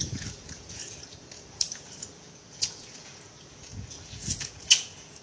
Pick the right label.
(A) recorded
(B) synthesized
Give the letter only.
B